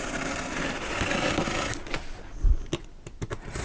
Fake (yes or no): no